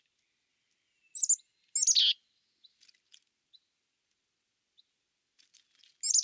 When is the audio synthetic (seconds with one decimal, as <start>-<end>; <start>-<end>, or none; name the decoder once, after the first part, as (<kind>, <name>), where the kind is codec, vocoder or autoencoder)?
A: none